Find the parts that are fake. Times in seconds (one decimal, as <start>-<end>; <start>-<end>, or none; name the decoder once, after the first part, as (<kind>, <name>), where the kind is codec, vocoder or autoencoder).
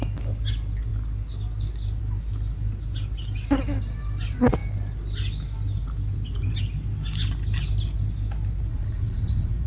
8.7-9.7 (vocoder, Vocos)